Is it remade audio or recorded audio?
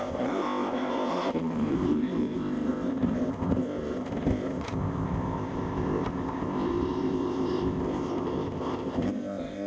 remade